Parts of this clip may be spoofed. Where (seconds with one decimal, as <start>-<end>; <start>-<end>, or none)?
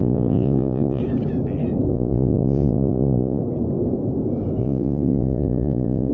0.0-1.0; 1.9-3.4; 4.6-6.1